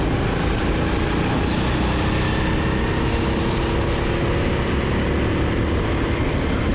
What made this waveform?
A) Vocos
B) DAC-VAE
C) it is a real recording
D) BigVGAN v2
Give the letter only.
C